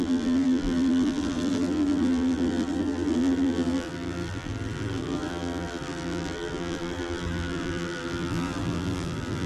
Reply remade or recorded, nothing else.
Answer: remade